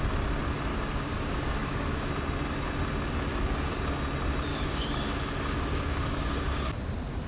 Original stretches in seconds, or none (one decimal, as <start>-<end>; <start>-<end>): 0.0-0.7; 2.1-3.3; 3.8-4.5; 6.8-7.3